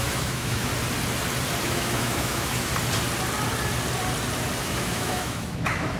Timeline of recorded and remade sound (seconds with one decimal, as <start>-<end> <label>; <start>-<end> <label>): 0.0-0.7 remade; 0.7-1.6 recorded; 1.6-2.7 remade; 2.7-4.6 recorded; 4.6-6.0 remade